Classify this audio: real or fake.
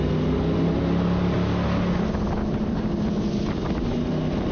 real